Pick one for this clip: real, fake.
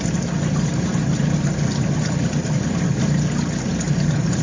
real